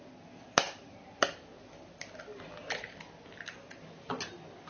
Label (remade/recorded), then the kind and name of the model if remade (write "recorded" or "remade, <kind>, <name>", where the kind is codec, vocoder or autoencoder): recorded